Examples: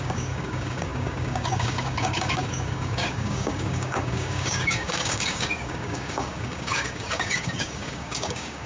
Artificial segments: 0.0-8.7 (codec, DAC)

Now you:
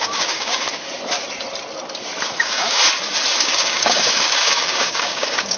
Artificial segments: 0.0-0.6 (codec, DAC); 2.4-2.8; 3.4-5.6

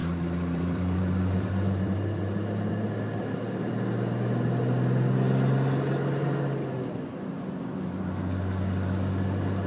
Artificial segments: 0.0-2.7 (vocoder, BigVGAN v2); 3.2-3.7